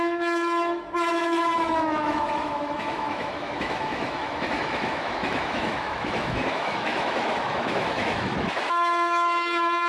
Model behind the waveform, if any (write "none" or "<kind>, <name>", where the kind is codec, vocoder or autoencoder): autoencoder, DAC-VAE